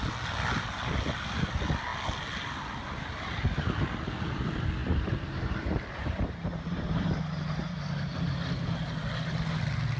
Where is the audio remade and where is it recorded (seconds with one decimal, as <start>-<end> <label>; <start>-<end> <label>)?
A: 0.0-4.8 recorded; 4.8-7.1 remade; 7.1-10.0 recorded